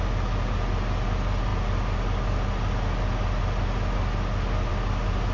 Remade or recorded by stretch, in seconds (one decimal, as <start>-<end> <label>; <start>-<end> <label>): 0.0-5.3 recorded